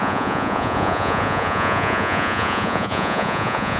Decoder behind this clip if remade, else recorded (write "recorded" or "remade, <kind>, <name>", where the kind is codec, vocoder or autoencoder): remade, vocoder, Vocos